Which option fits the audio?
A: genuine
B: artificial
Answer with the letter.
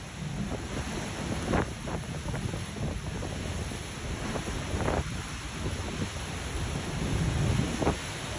A